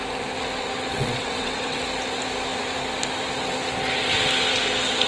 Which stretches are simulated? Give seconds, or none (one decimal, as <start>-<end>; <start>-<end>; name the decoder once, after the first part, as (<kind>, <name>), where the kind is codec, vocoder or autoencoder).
0.9-1.8 (vocoder, WaveNeXt)